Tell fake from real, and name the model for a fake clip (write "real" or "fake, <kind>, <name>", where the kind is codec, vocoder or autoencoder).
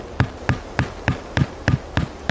real